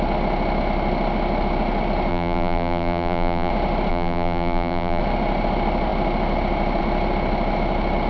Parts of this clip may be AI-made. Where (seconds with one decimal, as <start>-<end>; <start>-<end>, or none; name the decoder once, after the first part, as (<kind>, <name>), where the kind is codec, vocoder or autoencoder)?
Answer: 2.1-3.5 (vocoder, BigVGAN v2); 3.9-5.0